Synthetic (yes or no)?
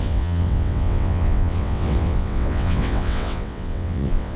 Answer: yes